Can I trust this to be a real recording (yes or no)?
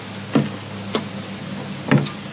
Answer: yes